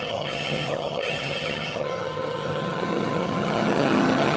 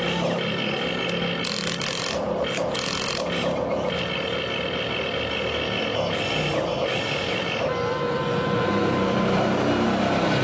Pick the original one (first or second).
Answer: second